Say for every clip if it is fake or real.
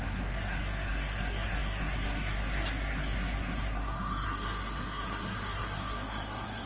fake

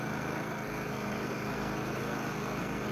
fake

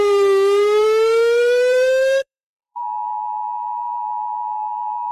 fake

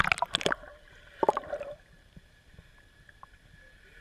real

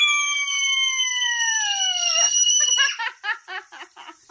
real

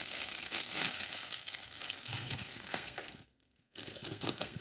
fake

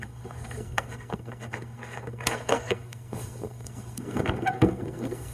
fake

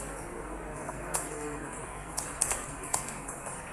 fake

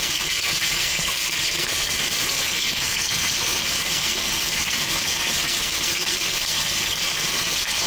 fake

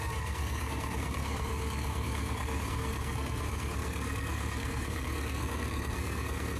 fake